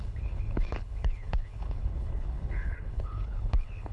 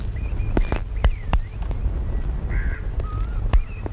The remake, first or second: first